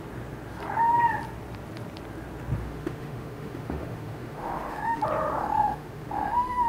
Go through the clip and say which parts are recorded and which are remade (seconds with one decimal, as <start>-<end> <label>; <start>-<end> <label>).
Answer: 0.0-2.6 recorded; 2.6-5.0 remade; 5.0-5.4 recorded; 5.4-6.7 remade